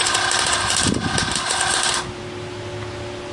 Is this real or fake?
real